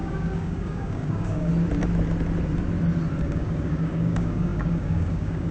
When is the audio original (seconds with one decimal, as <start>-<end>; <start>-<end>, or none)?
1.5-3.2